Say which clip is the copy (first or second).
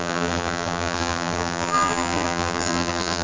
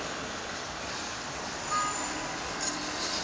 first